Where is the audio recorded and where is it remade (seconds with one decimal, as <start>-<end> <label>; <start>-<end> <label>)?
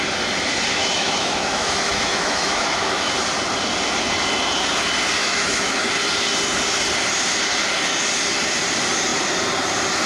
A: 0.0-0.7 recorded; 0.7-3.1 remade; 3.1-5.2 recorded; 5.2-5.9 remade; 5.9-10.1 recorded